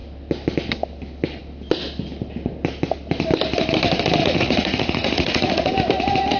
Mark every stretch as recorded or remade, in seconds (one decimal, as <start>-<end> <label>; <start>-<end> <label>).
0.0-4.2 recorded; 4.2-5.7 remade; 5.7-6.4 recorded